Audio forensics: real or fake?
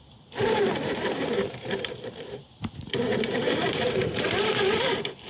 fake